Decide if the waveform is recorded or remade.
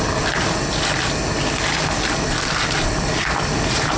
recorded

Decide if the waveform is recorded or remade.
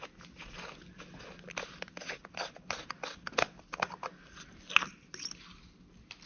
recorded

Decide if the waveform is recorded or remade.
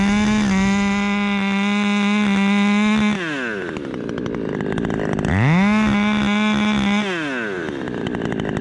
recorded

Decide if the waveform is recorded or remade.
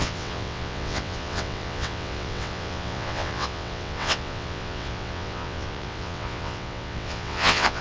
remade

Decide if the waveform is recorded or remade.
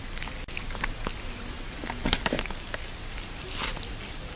recorded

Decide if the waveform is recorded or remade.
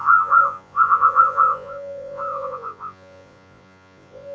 remade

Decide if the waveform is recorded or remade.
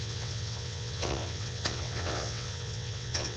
remade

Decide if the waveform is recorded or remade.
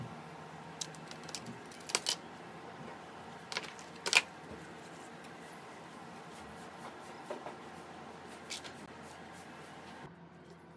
recorded